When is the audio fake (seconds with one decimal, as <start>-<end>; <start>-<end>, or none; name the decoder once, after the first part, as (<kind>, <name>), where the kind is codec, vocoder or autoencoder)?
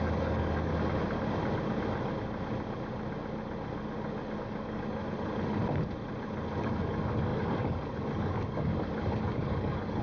0.0-0.7 (codec, DAC); 4.4-5.0; 6.6-10.0